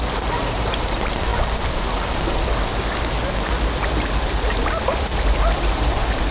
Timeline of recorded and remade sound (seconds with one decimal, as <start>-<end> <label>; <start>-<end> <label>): 0.0-6.3 recorded